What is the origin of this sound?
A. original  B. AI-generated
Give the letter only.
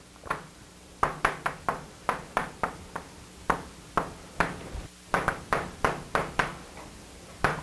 A